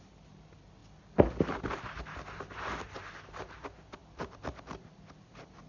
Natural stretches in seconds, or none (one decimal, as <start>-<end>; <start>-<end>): 0.0-5.7